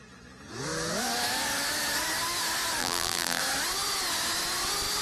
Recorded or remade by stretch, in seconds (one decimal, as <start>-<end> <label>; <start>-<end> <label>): 0.0-2.8 recorded; 2.8-3.4 remade; 3.4-5.0 recorded